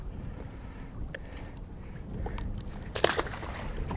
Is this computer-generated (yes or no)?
no